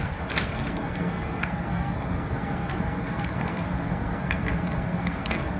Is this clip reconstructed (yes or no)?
yes